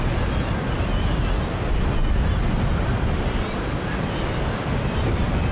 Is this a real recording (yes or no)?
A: yes